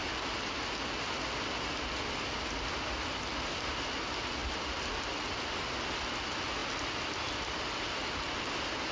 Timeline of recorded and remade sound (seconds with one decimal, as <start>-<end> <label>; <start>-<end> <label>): 0.0-8.9 recorded